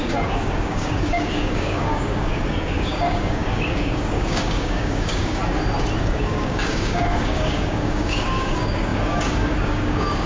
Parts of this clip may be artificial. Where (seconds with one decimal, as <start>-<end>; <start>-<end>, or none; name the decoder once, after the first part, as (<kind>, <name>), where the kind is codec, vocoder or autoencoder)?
0.0-5.4 (codec, DAC); 6.0-10.3